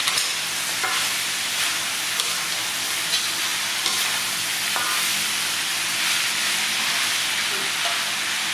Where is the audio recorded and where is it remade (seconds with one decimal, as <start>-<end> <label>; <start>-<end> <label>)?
0.0-8.5 recorded